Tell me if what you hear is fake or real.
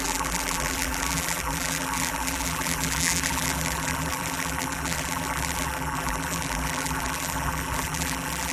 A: fake